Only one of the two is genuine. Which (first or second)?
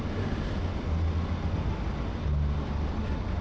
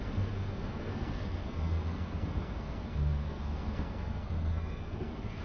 first